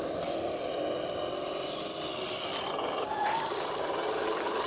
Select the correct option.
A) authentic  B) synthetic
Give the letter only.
A